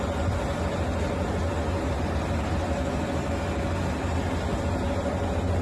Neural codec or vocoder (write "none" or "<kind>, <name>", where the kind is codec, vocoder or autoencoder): none